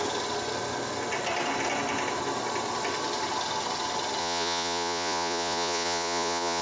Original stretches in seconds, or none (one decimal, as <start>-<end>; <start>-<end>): 0.0-4.2